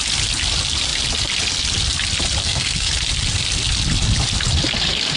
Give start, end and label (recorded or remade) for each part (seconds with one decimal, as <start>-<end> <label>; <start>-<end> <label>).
0.0-2.4 recorded; 2.4-2.9 remade; 2.9-5.2 recorded